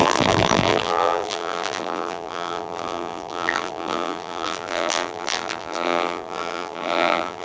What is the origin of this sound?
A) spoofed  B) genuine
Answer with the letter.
A